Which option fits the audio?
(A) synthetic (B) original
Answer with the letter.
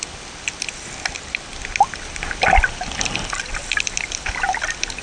B